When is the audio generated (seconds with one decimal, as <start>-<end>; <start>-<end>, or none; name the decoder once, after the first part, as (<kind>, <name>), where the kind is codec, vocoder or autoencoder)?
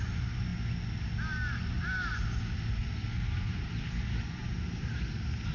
none